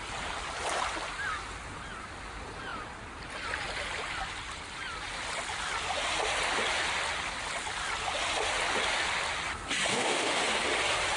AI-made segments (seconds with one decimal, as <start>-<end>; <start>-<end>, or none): 9.9-10.4